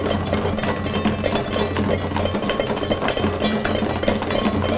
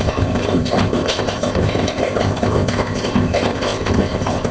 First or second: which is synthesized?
second